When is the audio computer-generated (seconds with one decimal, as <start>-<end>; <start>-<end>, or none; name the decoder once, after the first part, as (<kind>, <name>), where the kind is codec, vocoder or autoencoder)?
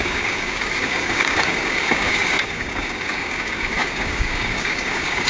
0.0-5.3 (codec, DAC)